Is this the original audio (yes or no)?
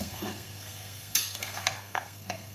no